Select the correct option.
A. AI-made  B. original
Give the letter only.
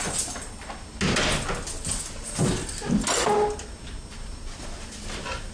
B